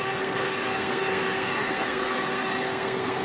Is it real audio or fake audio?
fake